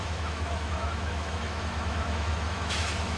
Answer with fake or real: fake